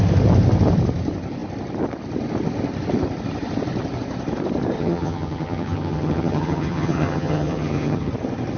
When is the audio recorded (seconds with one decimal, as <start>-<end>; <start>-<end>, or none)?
0.0-4.8; 8.1-8.6